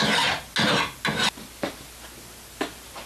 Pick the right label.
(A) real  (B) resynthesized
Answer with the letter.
A